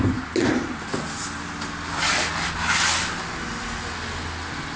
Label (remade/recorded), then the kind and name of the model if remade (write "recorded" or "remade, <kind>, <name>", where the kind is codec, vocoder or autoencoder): recorded